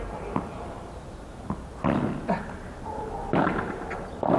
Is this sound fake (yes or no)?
no